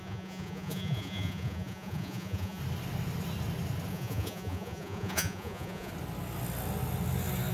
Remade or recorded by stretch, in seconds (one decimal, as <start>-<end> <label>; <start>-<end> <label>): 0.0-2.6 remade; 2.6-3.9 recorded; 3.9-5.9 remade; 5.9-7.5 recorded